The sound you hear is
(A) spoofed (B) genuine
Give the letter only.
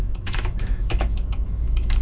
A